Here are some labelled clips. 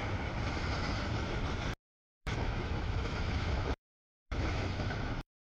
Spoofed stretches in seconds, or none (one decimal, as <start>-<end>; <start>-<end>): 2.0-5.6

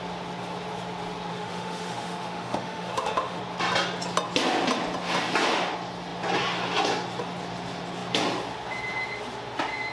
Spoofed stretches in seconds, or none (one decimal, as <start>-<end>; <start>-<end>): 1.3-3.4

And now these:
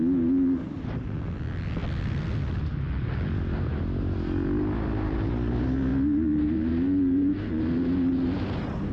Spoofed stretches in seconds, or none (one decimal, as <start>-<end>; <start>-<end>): none

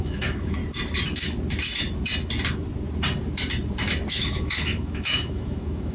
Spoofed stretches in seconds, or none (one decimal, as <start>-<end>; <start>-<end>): 0.0-0.6; 4.1-5.9